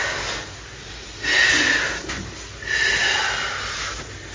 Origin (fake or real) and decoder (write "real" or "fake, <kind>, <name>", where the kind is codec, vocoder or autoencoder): real